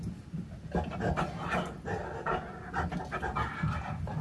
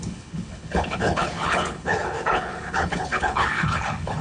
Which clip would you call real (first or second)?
first